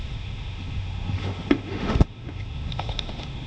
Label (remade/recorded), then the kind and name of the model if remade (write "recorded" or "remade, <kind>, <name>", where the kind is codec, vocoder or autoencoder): remade, autoencoder, DAC-VAE